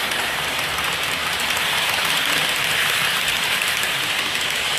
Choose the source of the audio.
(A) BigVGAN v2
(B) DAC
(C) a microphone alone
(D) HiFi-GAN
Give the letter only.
A